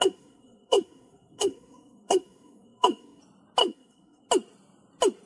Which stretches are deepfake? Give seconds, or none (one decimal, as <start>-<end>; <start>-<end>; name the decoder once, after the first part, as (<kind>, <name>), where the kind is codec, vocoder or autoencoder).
0.0-3.2 (codec, SNAC); 3.6-4.3